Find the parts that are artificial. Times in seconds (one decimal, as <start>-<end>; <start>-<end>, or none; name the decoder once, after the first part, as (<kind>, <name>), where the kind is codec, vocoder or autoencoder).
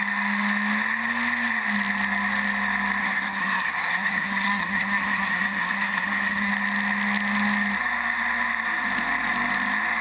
3.0-6.5 (codec, SNAC)